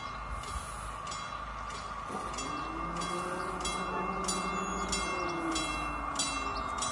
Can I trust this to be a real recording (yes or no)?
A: yes